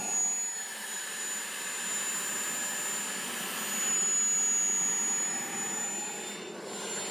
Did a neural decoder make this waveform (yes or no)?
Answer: no